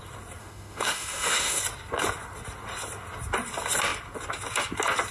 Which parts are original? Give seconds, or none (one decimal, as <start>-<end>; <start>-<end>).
0.0-0.4; 1.6-5.1